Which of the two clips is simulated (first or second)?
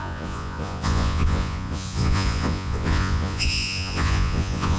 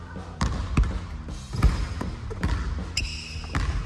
first